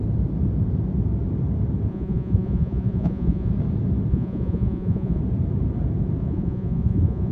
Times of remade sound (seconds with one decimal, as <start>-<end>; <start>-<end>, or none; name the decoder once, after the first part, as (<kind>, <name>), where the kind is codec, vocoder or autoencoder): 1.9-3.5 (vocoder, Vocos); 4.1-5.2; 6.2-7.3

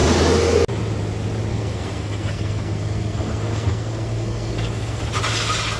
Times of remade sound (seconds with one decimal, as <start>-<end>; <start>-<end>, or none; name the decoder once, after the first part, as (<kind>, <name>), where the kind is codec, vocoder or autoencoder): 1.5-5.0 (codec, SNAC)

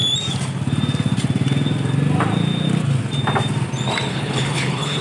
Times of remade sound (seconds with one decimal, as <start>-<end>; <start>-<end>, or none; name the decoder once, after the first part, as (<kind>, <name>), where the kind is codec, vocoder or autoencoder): 4.1-5.0 (codec, HILCodec)